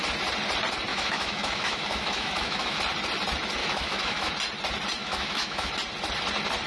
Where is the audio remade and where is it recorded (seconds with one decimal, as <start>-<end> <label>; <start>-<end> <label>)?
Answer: 0.0-0.9 recorded; 0.9-2.8 remade; 2.8-3.6 recorded; 3.6-4.3 remade; 4.3-5.0 recorded; 5.0-5.7 remade; 5.7-6.7 recorded